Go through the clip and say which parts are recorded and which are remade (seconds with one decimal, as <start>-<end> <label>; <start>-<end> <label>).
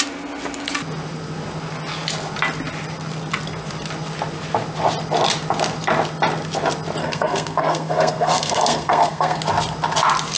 0.0-7.0 recorded; 7.0-9.4 remade; 9.4-10.4 recorded